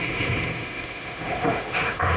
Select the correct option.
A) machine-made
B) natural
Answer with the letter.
A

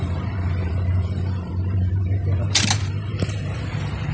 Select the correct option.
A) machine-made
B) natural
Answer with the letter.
A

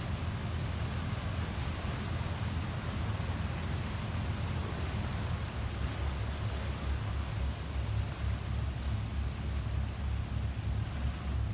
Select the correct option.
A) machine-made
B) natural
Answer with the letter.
B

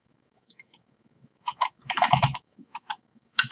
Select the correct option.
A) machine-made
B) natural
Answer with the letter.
A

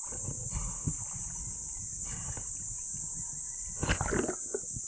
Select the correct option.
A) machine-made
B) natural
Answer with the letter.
B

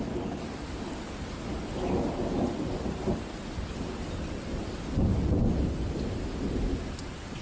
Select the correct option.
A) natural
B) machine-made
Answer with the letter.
A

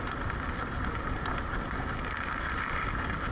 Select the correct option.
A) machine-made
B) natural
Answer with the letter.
B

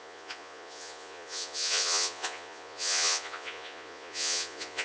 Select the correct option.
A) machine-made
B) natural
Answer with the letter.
A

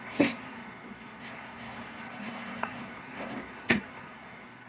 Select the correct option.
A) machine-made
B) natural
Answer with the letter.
A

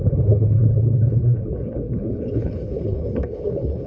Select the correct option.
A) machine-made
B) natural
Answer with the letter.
A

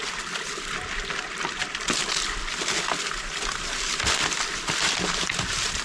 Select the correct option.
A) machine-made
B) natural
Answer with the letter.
B